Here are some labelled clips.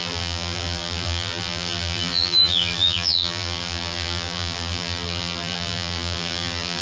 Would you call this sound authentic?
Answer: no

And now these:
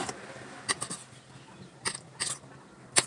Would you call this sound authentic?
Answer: no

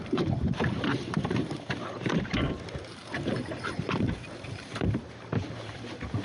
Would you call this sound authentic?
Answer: no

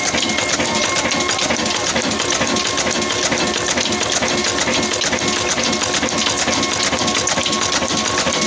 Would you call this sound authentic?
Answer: yes